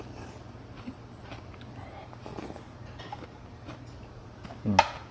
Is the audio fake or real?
real